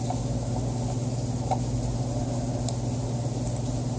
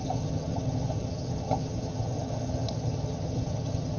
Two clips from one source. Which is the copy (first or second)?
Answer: second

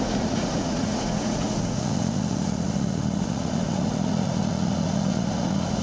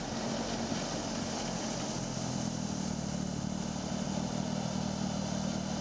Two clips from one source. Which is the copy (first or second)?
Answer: first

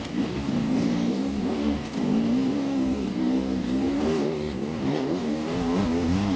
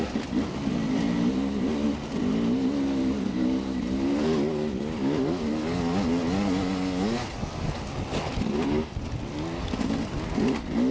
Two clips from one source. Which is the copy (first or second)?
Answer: first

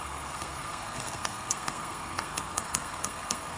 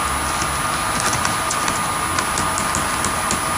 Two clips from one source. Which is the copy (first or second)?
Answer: first